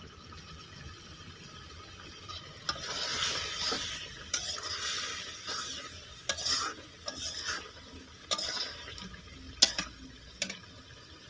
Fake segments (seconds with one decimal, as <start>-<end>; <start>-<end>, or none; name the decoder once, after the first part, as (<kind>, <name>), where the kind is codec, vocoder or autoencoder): none